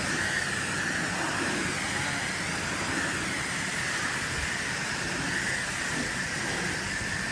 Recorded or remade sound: recorded